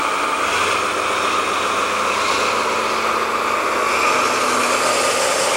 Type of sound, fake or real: real